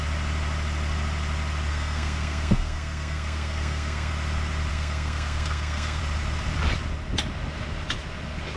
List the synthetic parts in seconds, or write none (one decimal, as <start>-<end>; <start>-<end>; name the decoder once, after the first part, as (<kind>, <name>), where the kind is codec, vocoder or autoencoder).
1.7-4.1 (codec, SNAC); 4.7-6.0